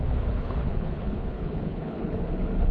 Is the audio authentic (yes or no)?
no